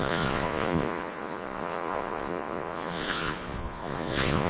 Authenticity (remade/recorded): remade